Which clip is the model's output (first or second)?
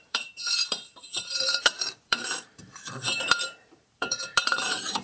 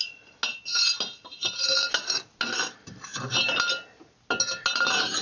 first